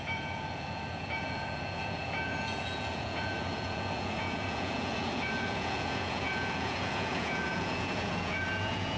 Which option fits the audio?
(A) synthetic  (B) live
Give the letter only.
A